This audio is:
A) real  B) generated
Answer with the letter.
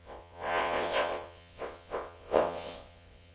B